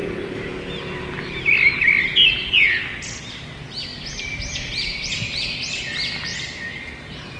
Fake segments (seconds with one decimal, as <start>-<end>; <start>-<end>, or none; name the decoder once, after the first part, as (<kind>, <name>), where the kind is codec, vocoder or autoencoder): 3.9-5.1 (vocoder, BigVGAN v2)